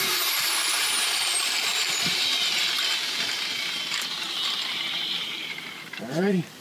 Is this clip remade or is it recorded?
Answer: remade